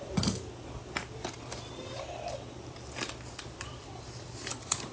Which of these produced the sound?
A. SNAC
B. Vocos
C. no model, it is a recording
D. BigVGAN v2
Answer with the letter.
C